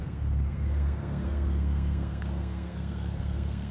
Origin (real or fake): fake